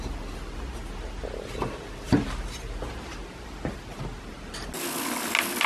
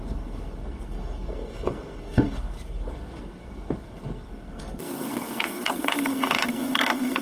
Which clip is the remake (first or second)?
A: second